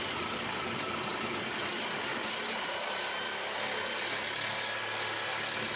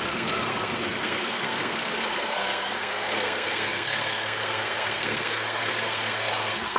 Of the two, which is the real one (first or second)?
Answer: first